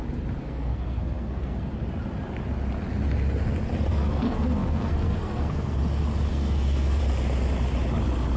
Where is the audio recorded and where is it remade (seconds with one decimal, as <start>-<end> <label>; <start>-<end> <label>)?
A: 0.0-0.4 recorded; 0.4-1.7 remade; 1.7-3.9 recorded; 3.9-5.8 remade; 5.8-6.3 recorded; 6.3-7.0 remade; 7.0-8.4 recorded